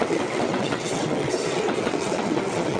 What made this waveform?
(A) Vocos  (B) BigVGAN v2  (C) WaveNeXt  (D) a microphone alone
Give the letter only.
C